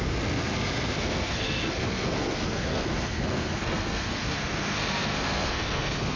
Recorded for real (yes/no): no